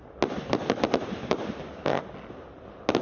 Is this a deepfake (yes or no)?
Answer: no